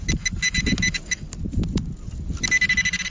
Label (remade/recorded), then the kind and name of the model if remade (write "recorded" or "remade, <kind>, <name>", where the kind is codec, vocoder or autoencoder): recorded